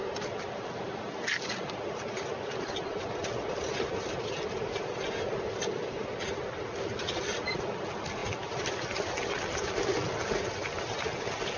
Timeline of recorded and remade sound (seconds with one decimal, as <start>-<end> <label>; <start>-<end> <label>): 0.0-11.6 recorded

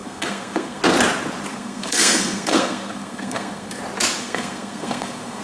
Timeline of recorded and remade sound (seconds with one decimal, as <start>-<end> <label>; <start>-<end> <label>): 0.0-0.8 remade; 0.8-1.5 recorded; 1.5-3.8 remade; 3.8-4.2 recorded; 4.2-5.4 remade

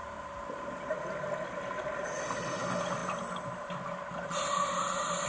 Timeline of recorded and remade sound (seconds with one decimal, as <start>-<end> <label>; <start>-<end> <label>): 0.0-5.3 recorded

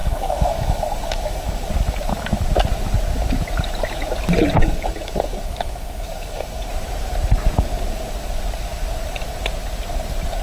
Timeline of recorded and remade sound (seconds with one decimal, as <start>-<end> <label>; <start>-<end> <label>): 0.0-1.7 remade; 1.7-4.6 recorded; 4.6-6.7 remade; 6.7-10.4 recorded